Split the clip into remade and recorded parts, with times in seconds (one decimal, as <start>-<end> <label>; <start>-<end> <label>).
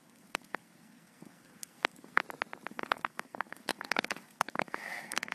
0.0-2.2 remade; 2.2-2.7 recorded; 2.7-5.3 remade